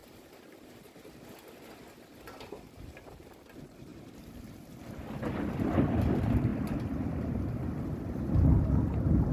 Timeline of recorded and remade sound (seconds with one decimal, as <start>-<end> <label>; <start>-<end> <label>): 0.0-2.2 recorded; 2.2-3.9 remade; 3.9-5.5 recorded; 5.5-9.3 remade